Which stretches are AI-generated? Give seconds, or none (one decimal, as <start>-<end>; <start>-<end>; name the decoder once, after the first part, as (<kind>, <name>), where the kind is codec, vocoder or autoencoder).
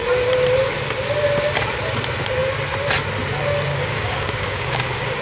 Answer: 3.7-5.2 (codec, DAC)